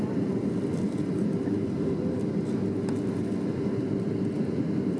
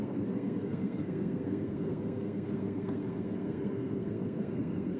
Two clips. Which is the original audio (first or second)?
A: first